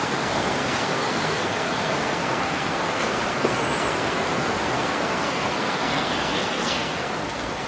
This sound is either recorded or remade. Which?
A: remade